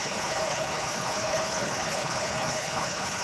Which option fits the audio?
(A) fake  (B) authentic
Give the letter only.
A